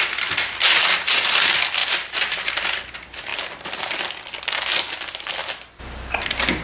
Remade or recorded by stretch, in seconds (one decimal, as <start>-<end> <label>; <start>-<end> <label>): 0.0-1.8 recorded; 1.8-2.8 remade; 2.8-6.6 recorded